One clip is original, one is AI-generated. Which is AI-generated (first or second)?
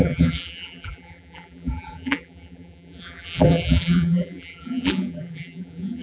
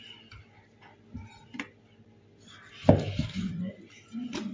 first